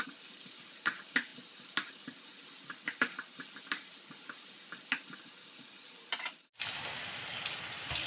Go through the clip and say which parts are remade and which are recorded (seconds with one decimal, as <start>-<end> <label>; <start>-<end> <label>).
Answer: 0.0-8.1 recorded